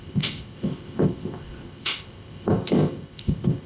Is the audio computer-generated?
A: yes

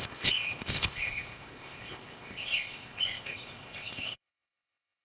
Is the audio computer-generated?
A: yes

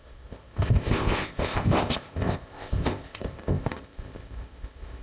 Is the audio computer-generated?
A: yes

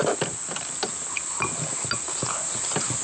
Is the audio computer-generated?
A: no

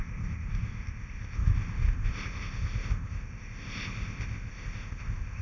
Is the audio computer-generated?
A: yes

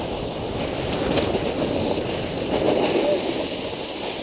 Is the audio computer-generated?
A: no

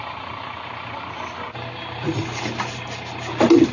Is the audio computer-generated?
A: no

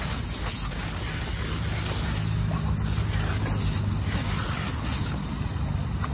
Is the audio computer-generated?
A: no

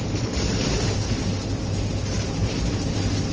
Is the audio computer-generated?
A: no